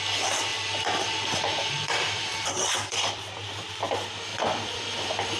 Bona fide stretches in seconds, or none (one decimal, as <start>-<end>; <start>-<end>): 0.0-0.5; 3.7-4.3; 4.8-5.4